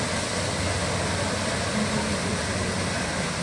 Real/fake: real